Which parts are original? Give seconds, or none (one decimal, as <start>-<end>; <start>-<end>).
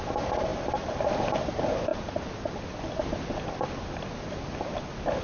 0.0-0.5; 1.0-5.2